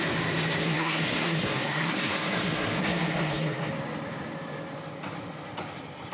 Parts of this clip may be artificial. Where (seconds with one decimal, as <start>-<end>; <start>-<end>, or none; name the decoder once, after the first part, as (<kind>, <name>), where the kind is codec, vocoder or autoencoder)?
0.6-3.7 (codec, SNAC)